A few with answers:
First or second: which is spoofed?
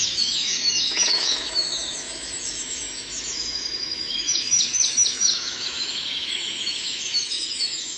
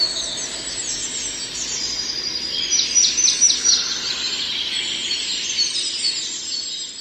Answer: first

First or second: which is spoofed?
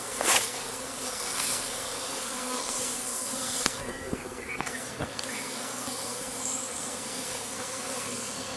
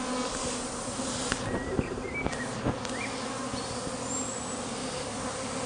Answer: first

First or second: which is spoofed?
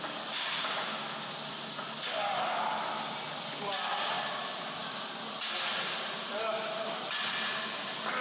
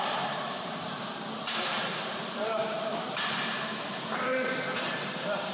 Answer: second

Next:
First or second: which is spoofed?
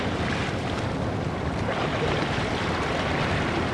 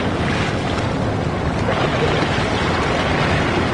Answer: first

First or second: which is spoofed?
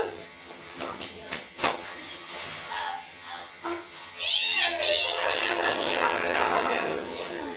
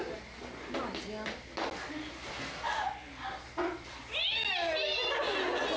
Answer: first